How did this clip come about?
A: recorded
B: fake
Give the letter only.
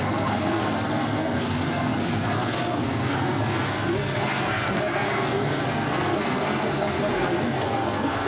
B